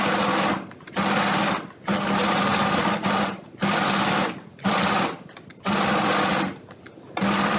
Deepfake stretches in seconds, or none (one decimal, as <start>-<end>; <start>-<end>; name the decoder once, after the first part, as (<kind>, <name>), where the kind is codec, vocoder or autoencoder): none

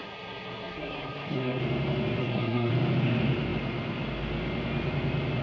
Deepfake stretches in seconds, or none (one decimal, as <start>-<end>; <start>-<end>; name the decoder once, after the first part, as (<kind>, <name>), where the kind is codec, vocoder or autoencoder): 0.0-1.6 (codec, SNAC); 2.2-2.7

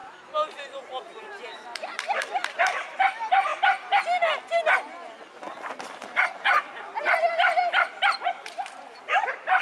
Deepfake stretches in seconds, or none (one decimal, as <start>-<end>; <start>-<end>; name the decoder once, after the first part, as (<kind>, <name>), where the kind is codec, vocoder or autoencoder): 1.2-3.5 (vocoder, BigVGAN v2); 7.3-9.6

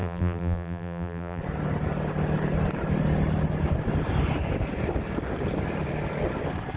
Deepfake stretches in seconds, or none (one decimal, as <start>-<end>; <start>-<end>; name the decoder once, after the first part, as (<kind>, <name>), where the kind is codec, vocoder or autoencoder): 0.0-1.4 (vocoder, BigVGAN v2)

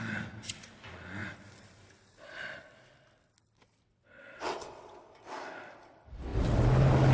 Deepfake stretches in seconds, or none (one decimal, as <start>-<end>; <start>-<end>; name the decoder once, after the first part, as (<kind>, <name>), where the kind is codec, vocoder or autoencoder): 3.9-5.0 (vocoder, WaveNeXt)